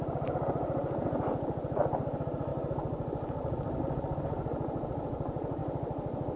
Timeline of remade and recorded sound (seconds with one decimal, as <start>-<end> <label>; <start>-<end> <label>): 0.0-6.4 recorded